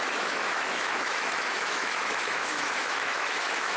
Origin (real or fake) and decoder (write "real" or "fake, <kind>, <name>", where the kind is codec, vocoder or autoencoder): fake, autoencoder, DAC-VAE